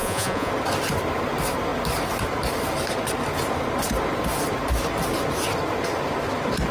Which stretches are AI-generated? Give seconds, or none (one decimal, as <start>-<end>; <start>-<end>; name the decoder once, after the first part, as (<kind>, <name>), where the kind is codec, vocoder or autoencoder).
0.0-0.5 (vocoder, Vocos)

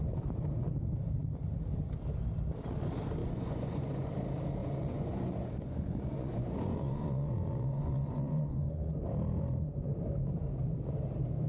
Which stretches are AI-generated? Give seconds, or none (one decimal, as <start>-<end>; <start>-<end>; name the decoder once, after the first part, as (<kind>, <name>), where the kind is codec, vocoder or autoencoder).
3.2-4.1 (vocoder, Vocos); 4.6-8.9

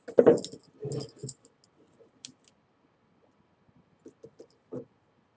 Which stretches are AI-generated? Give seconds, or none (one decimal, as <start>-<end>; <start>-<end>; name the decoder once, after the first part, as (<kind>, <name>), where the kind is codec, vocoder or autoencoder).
none

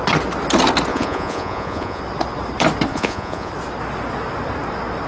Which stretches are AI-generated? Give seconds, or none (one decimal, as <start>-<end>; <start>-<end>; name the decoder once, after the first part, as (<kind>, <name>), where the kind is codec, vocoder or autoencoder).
0.9-2.0 (vocoder, Vocos); 2.9-3.5

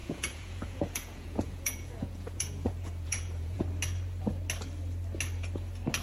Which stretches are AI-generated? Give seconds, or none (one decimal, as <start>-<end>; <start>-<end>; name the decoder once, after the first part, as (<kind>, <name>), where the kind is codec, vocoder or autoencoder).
0.0-3.6 (vocoder, Vocos)